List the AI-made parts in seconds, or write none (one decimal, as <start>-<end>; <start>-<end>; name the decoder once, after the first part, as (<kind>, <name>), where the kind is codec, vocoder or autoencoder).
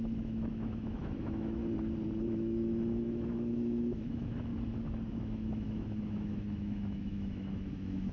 0.0-1.6 (autoencoder, DAC-VAE); 2.2-4.5; 5.1-8.1